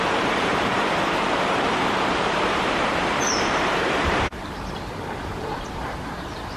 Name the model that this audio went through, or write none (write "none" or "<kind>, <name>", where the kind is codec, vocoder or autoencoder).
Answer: vocoder, BigVGAN v2